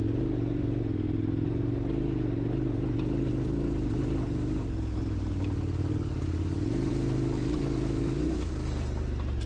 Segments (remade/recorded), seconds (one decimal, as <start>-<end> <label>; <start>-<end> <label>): 0.0-6.9 recorded; 6.9-8.5 remade; 8.5-9.5 recorded